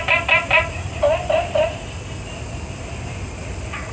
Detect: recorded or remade recorded